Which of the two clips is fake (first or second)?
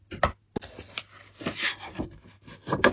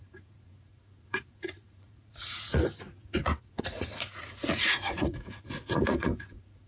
second